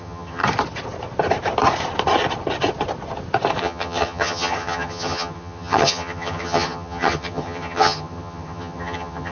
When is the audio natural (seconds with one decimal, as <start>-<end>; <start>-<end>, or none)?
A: 0.4-3.6